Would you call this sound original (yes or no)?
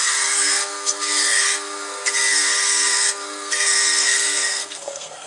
no